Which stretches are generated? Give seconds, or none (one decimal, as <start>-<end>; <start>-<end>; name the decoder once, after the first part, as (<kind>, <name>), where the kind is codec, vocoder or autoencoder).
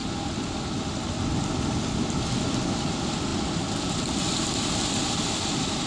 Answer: 0.0-0.6 (vocoder, BigVGAN v2); 3.3-5.2